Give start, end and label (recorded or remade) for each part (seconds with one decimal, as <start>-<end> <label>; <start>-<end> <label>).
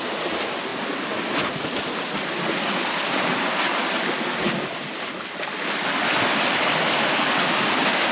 0.0-8.1 recorded